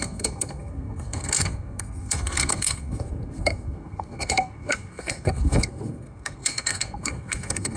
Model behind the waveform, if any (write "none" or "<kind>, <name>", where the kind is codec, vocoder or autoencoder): codec, SNAC